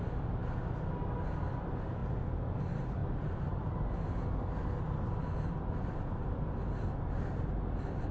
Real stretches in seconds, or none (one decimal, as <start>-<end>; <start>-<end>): 0.0-8.1